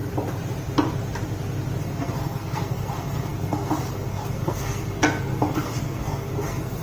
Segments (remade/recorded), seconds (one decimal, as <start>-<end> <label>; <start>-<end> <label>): 0.0-1.8 recorded; 1.8-6.8 remade